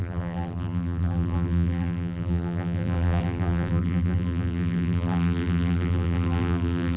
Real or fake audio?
fake